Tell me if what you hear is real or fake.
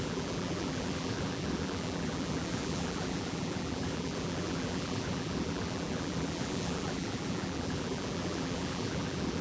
fake